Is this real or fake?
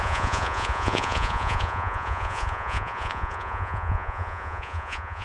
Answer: fake